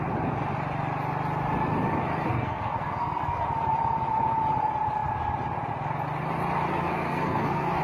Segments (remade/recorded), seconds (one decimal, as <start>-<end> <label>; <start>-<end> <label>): 0.0-2.3 recorded; 2.3-3.4 remade; 3.4-6.7 recorded; 6.7-7.8 remade